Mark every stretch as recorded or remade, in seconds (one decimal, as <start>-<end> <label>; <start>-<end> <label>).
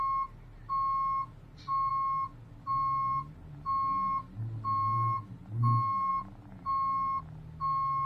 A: 0.0-8.1 recorded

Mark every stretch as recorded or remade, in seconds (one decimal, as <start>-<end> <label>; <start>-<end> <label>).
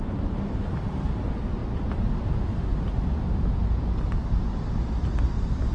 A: 0.0-5.7 recorded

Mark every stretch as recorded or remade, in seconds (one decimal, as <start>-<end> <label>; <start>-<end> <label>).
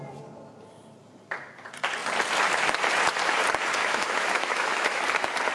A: 0.0-3.8 recorded; 3.8-5.0 remade; 5.0-5.5 recorded